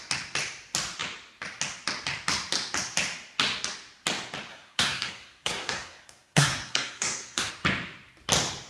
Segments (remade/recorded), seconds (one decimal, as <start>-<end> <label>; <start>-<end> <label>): 0.0-4.5 recorded; 4.5-7.5 remade; 7.5-8.7 recorded